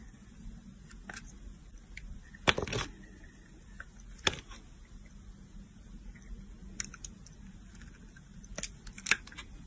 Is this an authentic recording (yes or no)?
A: yes